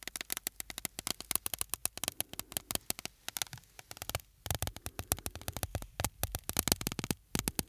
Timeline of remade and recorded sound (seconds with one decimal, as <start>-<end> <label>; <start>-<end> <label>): 0.0-7.7 recorded